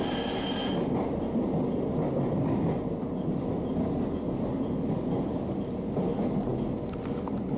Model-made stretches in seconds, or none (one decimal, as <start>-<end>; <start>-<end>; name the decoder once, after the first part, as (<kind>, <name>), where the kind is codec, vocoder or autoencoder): none